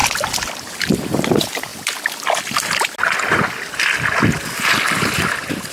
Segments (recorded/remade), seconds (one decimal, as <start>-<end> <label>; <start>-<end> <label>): 0.0-0.8 recorded; 0.8-1.7 remade; 1.7-4.7 recorded; 4.7-5.7 remade